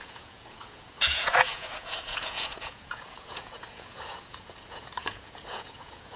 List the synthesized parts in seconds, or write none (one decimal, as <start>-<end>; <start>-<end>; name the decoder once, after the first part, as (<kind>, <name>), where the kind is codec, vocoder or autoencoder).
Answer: 0.0-6.2 (vocoder, Vocos)

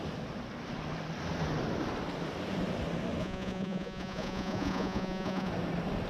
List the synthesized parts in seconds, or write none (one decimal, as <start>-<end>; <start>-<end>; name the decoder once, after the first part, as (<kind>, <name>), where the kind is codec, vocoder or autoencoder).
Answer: 3.2-5.5 (vocoder, Vocos)

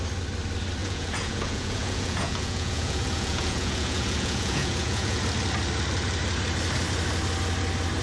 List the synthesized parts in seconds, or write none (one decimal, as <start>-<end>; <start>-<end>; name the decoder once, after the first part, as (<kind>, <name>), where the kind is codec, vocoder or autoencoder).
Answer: 0.8-5.2 (vocoder, Vocos)

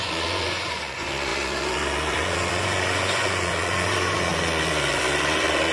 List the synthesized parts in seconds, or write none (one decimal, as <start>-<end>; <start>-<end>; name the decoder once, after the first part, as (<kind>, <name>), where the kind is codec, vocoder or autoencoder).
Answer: 0.0-5.7 (vocoder, Vocos)

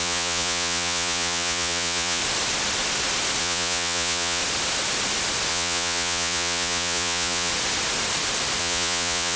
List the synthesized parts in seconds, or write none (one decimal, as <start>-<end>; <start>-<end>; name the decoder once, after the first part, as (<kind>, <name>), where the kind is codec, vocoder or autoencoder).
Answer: 0.0-2.2 (vocoder, Vocos); 3.4-4.4; 5.5-7.5; 8.6-9.4

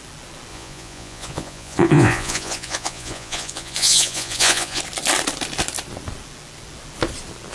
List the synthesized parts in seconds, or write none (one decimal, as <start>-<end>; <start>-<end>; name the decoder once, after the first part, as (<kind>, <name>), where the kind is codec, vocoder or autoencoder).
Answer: 0.5-4.8 (vocoder, Vocos)

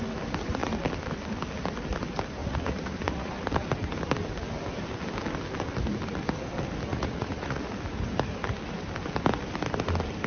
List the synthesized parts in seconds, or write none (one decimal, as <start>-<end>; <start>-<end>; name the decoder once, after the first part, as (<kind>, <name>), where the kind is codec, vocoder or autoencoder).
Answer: 2.4-3.3 (vocoder, Vocos); 6.9-7.7

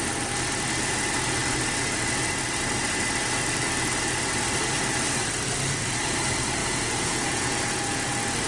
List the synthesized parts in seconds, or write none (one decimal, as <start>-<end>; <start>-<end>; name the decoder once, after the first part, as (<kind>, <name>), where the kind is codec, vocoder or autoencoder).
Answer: 6.6-8.1 (vocoder, Vocos)